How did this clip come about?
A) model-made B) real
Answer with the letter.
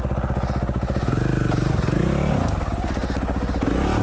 B